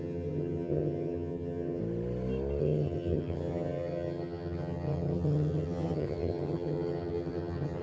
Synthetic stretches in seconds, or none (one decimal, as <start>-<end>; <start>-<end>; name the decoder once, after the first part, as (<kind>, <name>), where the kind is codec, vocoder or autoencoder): 0.0-1.8 (vocoder, HiFi-GAN); 2.6-7.8